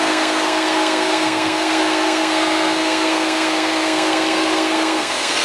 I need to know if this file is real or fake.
fake